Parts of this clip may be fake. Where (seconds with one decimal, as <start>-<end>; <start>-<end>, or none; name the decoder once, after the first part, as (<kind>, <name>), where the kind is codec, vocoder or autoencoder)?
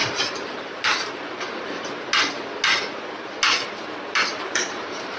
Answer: 0.0-1.9 (vocoder, BigVGAN v2); 4.3-5.2